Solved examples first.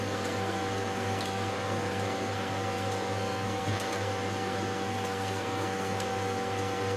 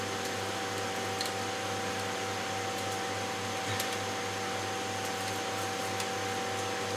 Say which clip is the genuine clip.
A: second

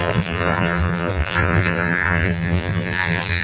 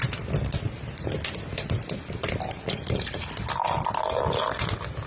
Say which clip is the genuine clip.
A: second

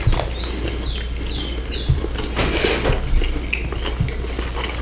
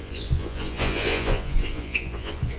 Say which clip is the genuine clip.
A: first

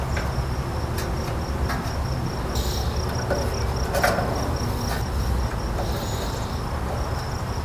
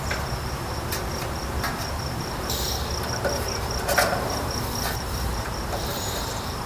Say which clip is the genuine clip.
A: first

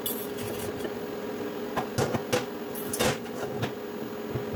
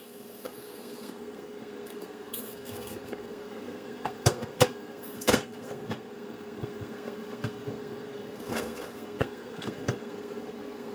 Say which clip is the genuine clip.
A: first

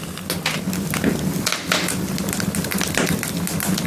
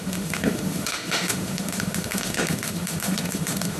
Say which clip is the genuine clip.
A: first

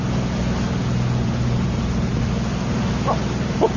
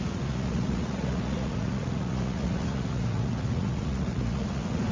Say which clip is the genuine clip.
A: first